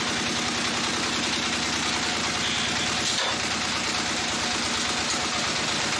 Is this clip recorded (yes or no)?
yes